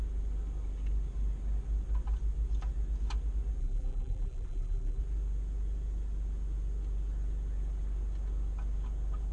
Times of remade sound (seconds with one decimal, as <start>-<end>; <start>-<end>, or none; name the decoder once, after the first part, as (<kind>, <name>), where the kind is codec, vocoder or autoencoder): 3.6-5.0 (vocoder, BigVGAN v2)